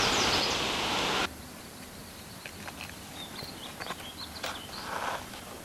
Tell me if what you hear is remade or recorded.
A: recorded